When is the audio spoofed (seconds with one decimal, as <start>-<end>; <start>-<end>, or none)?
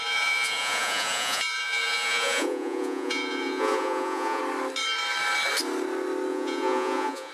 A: 0.0-4.4; 6.3-7.3